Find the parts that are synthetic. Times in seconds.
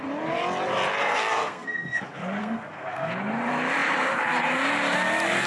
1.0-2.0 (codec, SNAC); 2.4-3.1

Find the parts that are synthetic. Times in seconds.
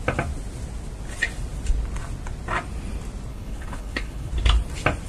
3.3-4.3 (codec, HILCodec)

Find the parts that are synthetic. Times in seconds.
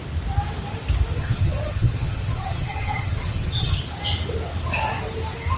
1.1-3.8 (vocoder, HiFi-GAN)